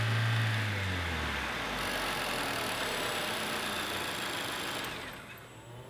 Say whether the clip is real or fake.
real